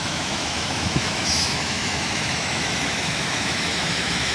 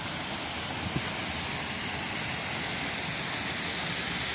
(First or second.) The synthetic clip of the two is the first